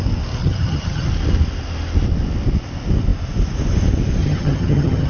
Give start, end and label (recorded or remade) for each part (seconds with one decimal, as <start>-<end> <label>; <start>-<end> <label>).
0.0-0.4 recorded; 0.4-1.1 remade; 1.1-4.2 recorded; 4.2-5.1 remade